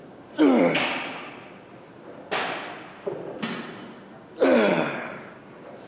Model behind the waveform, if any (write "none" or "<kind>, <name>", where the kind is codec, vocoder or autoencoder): none